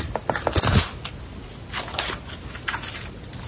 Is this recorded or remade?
recorded